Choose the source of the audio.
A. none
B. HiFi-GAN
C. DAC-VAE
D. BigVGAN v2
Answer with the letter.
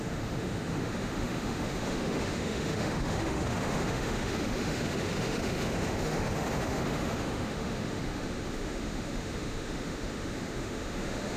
C